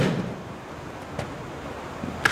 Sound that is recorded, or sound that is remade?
recorded